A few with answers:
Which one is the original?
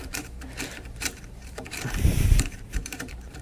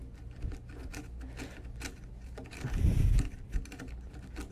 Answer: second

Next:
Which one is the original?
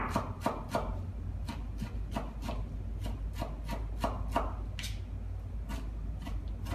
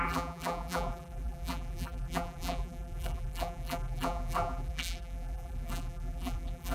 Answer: first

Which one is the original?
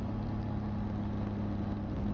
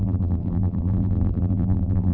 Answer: first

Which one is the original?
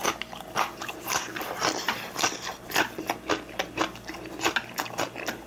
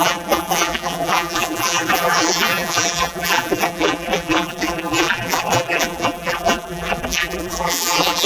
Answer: first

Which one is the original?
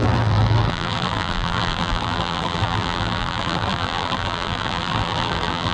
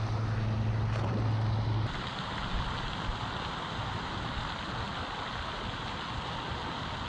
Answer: second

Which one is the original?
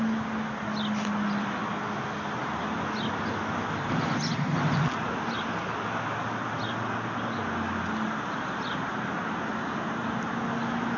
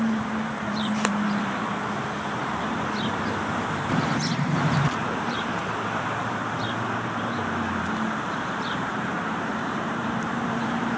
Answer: first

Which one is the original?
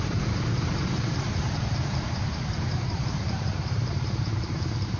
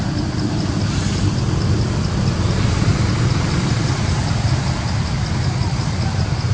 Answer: second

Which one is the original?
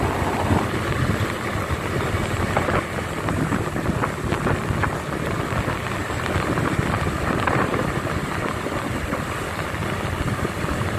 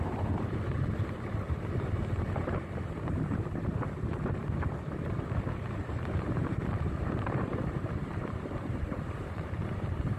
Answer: first